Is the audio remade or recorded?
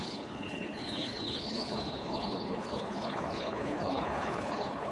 remade